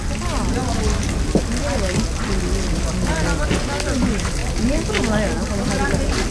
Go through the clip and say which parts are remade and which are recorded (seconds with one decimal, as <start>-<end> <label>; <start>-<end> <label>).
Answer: 0.0-6.3 recorded